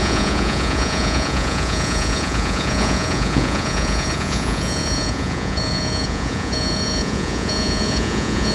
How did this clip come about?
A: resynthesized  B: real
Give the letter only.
A